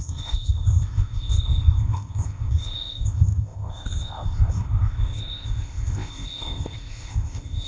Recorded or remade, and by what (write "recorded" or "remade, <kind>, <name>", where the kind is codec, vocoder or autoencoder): remade, codec, ZipCodec